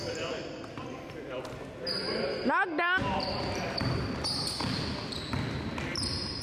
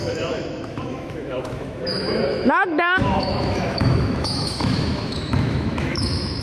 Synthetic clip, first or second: second